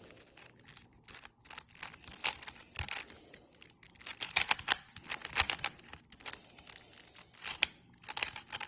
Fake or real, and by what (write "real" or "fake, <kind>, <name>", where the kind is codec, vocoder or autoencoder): real